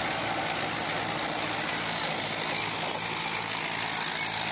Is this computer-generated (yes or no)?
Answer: no